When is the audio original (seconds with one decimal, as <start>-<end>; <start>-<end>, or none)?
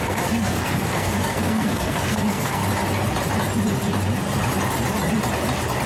2.6-5.9